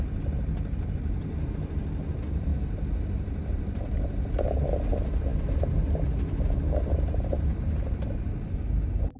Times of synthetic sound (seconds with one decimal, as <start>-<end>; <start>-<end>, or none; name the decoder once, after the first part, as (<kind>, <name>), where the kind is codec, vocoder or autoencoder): none